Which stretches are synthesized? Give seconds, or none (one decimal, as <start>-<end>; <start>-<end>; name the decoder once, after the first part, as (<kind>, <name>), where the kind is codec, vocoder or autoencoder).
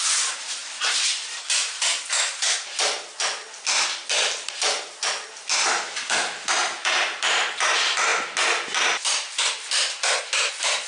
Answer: none